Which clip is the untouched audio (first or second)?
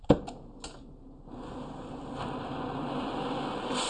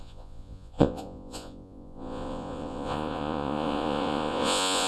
first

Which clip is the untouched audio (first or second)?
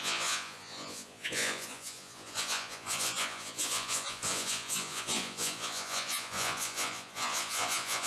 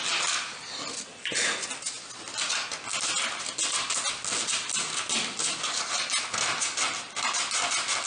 second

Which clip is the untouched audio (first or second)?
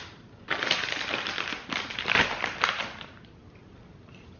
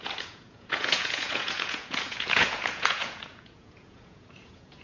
first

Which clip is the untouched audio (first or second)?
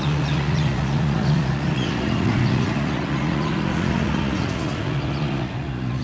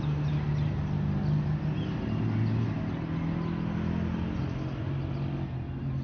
second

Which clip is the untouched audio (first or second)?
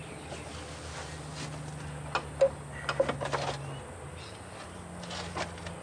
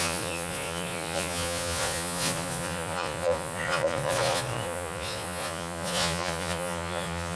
first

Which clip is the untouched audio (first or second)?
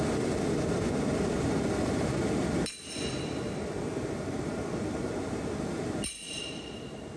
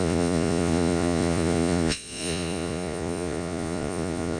first